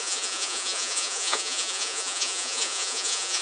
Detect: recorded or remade remade